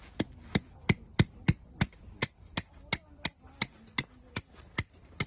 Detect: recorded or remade recorded